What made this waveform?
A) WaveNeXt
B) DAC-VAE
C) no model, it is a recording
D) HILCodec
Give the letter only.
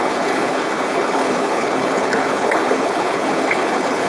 D